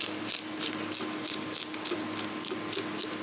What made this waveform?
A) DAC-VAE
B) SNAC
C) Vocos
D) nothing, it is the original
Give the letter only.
D